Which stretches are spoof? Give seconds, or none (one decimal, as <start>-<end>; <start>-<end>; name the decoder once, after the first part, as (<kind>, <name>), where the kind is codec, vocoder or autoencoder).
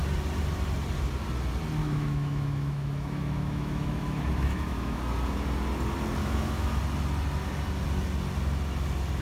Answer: 1.8-5.0 (autoencoder, DAC-VAE); 6.2-6.8